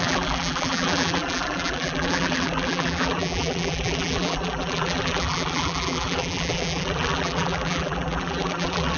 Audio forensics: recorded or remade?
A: remade